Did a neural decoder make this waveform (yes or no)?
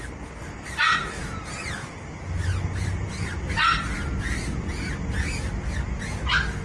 no